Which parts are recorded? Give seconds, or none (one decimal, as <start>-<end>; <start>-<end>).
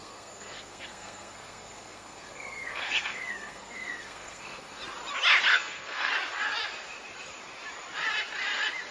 4.8-5.5; 6.1-8.9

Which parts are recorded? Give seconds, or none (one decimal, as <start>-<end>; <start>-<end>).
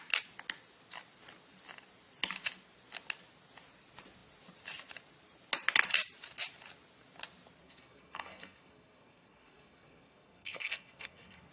0.0-7.6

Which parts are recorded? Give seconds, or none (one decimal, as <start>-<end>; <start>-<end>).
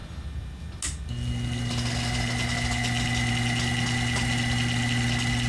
0.0-5.5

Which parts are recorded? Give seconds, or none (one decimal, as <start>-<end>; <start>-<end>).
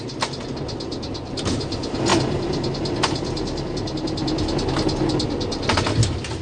0.0-6.4